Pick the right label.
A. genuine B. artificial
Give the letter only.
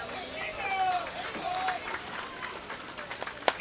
A